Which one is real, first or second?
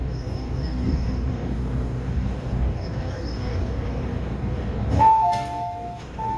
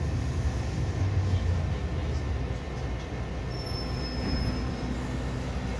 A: second